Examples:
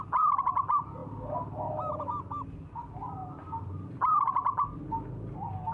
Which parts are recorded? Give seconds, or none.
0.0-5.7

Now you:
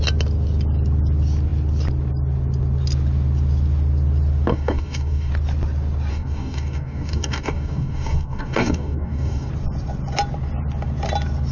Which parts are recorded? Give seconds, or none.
0.0-4.5; 5.3-6.1; 9.5-11.5

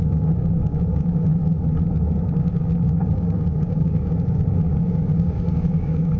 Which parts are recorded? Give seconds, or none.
1.3-2.1

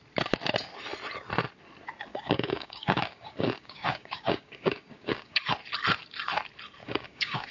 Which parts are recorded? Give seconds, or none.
0.0-2.1; 5.4-6.8

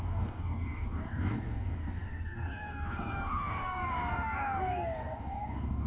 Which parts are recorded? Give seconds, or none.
none

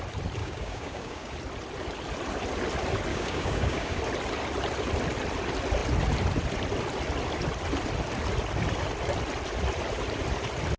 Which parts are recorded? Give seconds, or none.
0.0-0.4; 1.3-3.1; 4.0-10.8

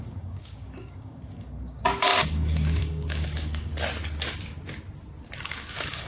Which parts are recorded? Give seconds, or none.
3.7-5.4